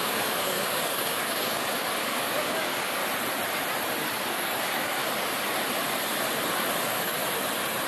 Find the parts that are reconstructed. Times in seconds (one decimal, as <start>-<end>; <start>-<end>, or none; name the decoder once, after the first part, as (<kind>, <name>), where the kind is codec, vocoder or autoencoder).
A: 0.0-3.0 (codec, DAC); 4.3-5.0; 6.8-7.2